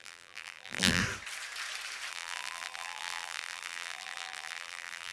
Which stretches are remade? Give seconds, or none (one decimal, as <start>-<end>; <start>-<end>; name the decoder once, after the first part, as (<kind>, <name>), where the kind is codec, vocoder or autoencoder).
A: 0.0-1.0 (vocoder, BigVGAN v2); 2.1-5.1